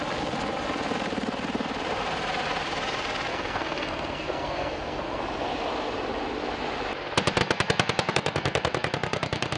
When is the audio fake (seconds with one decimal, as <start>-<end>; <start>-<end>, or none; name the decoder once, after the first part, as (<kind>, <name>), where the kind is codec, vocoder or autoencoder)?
3.3-5.2 (codec, SNAC); 7.4-9.6